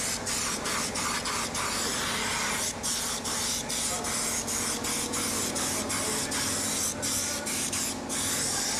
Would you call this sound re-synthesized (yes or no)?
no